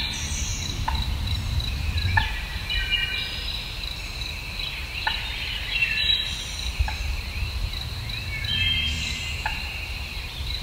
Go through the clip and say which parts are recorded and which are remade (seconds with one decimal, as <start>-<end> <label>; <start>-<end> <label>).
0.0-0.5 recorded; 0.5-3.5 remade; 3.5-4.8 recorded; 4.8-6.7 remade; 6.7-8.5 recorded; 8.5-9.7 remade; 9.7-10.6 recorded